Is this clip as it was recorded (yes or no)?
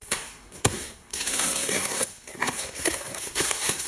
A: no